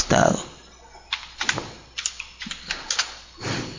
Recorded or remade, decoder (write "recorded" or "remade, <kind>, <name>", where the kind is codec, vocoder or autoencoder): recorded